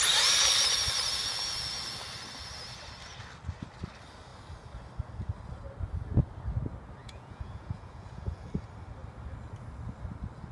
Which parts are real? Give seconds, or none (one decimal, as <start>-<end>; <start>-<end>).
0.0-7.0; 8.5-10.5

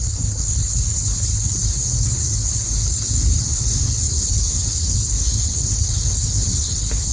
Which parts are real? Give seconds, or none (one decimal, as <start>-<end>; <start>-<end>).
none

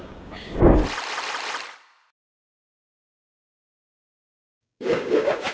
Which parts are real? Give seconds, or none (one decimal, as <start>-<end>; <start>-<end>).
0.8-3.8

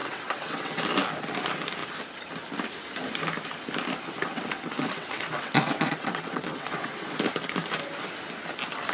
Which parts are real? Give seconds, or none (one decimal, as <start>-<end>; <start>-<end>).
0.8-4.3; 7.1-8.9

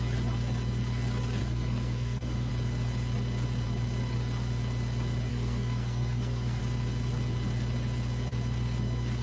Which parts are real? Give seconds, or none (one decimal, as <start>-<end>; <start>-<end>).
0.0-1.4; 2.5-5.3; 6.6-9.2

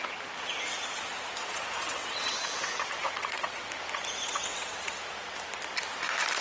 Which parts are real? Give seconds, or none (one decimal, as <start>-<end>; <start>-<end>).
0.0-1.4; 3.7-4.2; 4.9-6.4

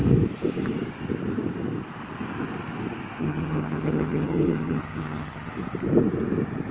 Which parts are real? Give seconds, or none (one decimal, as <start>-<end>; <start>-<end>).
0.0-3.2; 5.5-6.7